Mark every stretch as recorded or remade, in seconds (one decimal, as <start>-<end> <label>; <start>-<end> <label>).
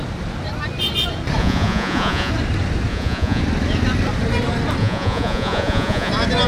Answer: 0.0-1.4 recorded; 1.4-2.3 remade; 2.3-2.9 recorded; 2.9-3.4 remade; 3.4-4.8 recorded; 4.8-6.1 remade; 6.1-6.5 recorded